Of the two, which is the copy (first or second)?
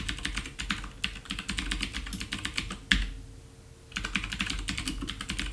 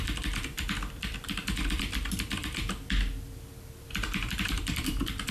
second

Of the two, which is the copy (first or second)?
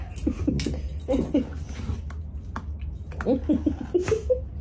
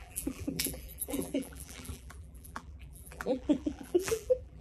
second